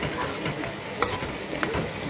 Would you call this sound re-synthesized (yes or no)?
no